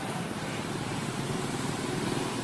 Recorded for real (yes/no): no